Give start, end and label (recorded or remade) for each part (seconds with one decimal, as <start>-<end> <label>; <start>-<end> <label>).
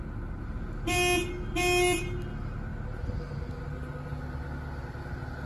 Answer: 0.0-5.5 recorded